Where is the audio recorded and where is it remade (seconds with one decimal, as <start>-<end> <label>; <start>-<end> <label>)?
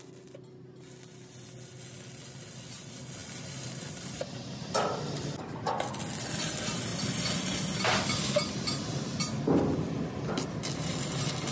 0.0-3.2 recorded; 3.2-4.3 remade; 4.3-11.5 recorded